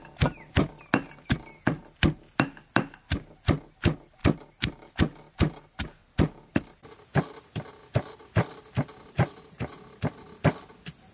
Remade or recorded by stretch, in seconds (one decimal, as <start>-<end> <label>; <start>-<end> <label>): 0.0-11.1 recorded